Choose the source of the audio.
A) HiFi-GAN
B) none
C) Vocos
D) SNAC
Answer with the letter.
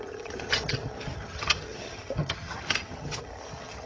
A